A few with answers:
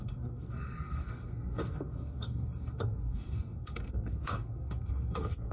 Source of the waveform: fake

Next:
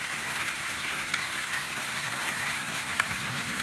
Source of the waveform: fake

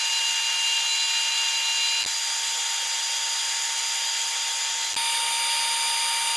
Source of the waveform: real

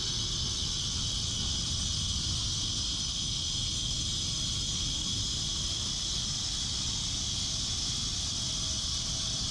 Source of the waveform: real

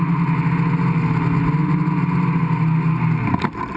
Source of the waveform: real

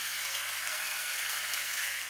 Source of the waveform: fake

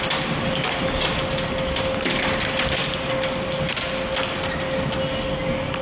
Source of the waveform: real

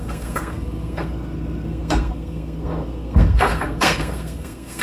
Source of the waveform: fake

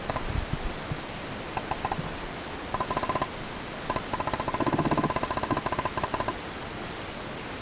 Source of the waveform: real